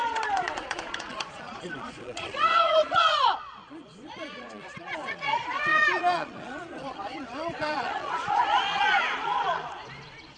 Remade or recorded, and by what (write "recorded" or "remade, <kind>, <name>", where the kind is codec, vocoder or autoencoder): remade, vocoder, Vocos